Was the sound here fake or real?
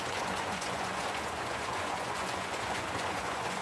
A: fake